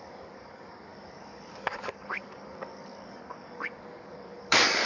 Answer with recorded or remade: remade